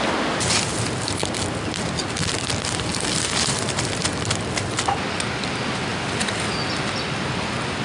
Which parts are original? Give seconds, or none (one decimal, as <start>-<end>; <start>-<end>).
0.0-0.7; 1.3-2.9; 4.3-5.9; 6.5-7.8